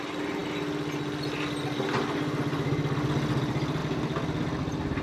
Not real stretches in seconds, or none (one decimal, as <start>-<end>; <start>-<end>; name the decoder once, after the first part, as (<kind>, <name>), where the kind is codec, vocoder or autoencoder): none